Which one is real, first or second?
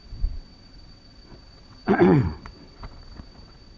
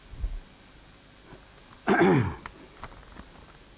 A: second